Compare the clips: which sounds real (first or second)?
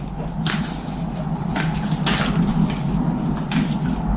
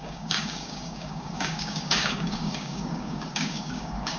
first